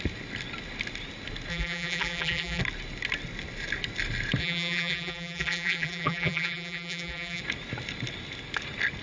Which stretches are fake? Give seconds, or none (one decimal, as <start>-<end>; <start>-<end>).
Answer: 1.5-2.6; 4.4-7.4